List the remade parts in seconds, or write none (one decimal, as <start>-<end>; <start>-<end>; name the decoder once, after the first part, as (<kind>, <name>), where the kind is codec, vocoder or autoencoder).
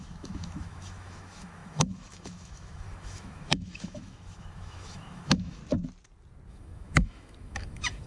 0.0-5.6 (autoencoder, DAC-VAE); 6.5-8.1